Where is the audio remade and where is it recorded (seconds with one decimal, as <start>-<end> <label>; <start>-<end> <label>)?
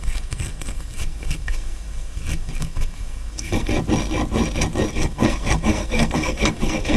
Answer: 0.0-3.7 remade; 3.7-4.9 recorded; 4.9-7.0 remade